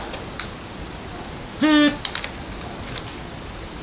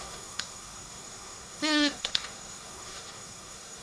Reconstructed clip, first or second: second